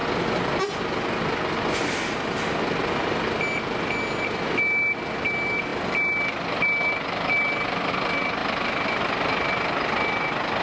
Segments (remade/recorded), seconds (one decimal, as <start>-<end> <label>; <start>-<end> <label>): 0.0-10.6 recorded